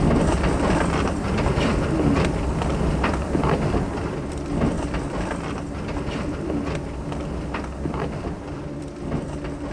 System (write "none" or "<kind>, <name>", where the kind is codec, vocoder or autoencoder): vocoder, BigVGAN v2